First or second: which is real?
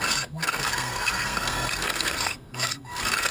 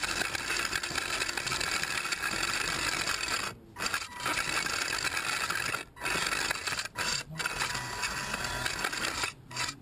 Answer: second